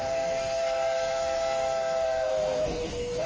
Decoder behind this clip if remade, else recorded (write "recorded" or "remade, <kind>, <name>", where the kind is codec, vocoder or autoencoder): remade, codec, SNAC